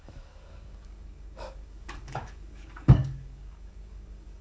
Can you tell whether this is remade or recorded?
remade